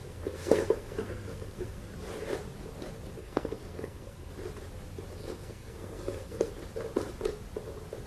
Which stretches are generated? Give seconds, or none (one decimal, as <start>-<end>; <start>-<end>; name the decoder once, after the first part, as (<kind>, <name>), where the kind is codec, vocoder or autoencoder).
0.0-1.9 (codec, SNAC); 3.2-4.3; 5.2-6.5